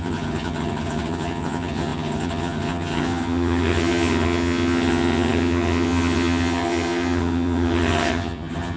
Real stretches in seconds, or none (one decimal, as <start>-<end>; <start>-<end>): none